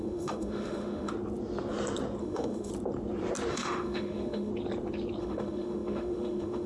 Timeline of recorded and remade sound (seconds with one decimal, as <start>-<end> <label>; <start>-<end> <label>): 0.0-1.1 remade; 1.1-2.2 recorded; 2.2-2.7 remade; 2.7-3.5 recorded; 3.5-4.5 remade; 4.5-5.2 recorded; 5.2-6.7 remade